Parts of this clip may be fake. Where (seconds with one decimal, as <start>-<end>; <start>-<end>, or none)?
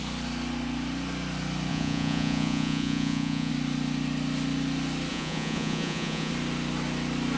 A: 1.7-3.5; 5.1-6.3